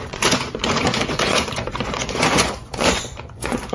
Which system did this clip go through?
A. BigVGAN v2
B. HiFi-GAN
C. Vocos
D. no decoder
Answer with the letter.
C